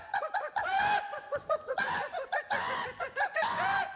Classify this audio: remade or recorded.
remade